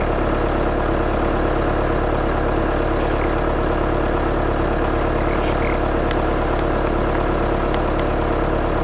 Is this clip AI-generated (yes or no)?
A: no